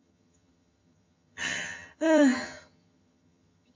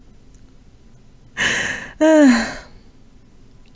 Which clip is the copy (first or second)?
first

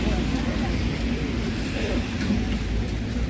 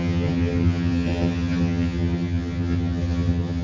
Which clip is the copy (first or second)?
second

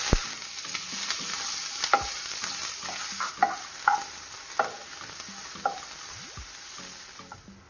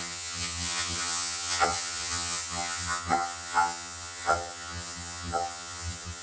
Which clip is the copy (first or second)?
second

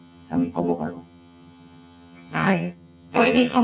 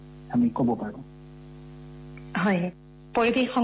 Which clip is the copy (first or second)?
first